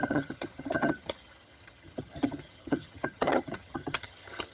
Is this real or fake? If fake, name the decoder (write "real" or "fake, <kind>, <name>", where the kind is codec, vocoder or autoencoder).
fake, vocoder, HiFi-GAN